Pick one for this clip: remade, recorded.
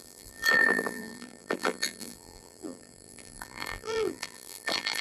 remade